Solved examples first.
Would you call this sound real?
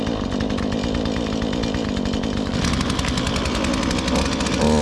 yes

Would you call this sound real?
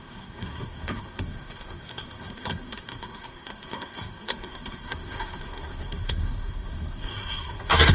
no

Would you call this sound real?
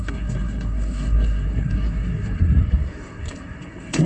no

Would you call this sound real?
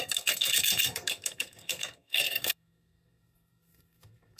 no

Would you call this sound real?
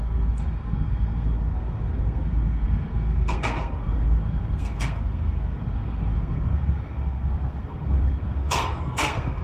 no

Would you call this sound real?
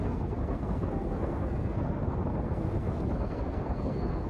no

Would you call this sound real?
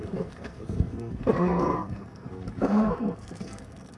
no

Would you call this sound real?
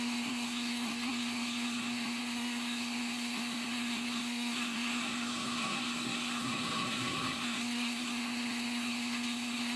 no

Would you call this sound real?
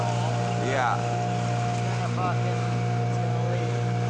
yes